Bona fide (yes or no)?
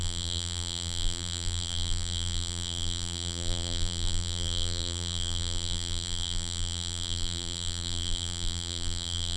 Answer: no